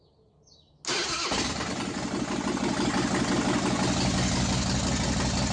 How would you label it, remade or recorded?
recorded